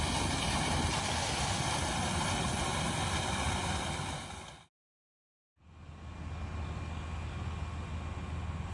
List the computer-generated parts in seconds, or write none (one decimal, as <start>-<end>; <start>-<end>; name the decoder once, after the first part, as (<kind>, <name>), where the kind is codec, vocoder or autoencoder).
3.6-4.2 (vocoder, BigVGAN v2)